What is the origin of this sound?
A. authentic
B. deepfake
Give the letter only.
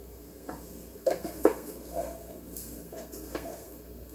B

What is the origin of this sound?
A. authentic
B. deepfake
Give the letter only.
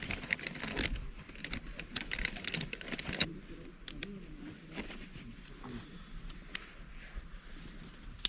A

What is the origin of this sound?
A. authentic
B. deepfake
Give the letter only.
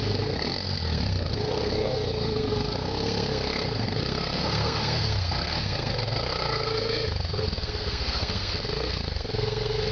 B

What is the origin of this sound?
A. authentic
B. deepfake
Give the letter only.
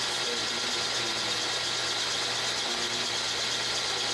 A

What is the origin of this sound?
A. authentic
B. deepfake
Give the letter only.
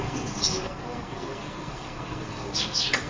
B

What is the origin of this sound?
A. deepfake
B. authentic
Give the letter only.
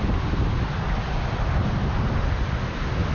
B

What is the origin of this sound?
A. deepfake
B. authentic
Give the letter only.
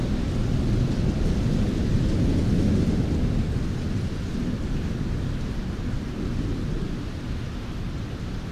B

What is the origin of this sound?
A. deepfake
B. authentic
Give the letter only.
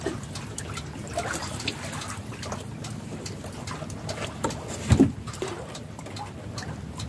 B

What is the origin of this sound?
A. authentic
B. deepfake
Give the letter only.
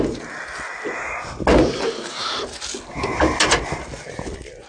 A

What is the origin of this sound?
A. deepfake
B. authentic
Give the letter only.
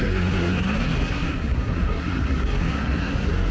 A